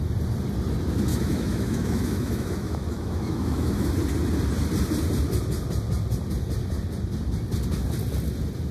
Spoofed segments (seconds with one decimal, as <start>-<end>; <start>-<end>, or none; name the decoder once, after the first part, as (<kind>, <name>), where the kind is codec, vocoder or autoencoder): 1.1-3.9 (autoencoder, DAC-VAE)